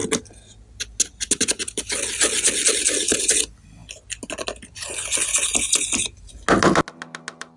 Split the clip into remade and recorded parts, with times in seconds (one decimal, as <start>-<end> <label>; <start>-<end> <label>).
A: 0.0-7.6 recorded